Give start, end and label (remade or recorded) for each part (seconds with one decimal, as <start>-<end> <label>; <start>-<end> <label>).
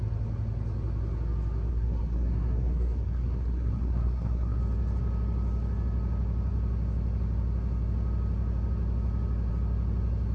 0.0-1.7 recorded; 1.7-4.6 remade; 4.6-10.3 recorded